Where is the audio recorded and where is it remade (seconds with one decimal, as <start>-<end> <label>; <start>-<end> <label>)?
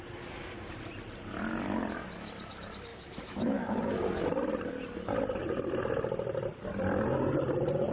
0.0-2.9 recorded; 2.9-4.0 remade; 4.0-7.9 recorded